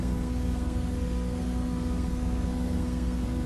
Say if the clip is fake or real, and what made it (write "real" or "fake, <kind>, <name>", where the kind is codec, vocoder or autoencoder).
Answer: fake, codec, SNAC